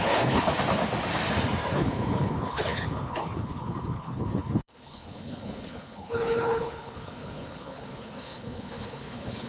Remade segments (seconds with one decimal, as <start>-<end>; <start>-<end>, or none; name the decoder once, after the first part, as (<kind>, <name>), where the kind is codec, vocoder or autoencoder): 0.0-0.5 (codec, HILCodec); 1.7-9.5